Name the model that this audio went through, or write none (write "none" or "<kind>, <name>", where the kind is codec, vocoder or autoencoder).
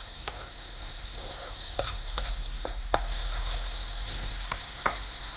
codec, SNAC